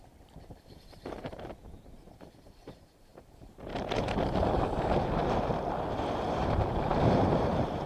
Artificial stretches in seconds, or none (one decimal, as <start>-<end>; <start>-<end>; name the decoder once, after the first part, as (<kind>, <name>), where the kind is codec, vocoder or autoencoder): 0.0-5.2 (vocoder, BigVGAN v2); 6.4-7.9